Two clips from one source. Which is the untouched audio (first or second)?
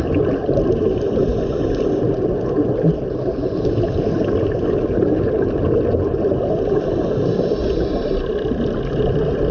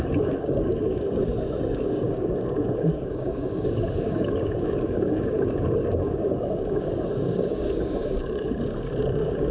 first